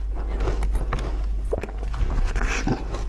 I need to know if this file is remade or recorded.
recorded